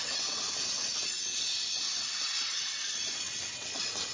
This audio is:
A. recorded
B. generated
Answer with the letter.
B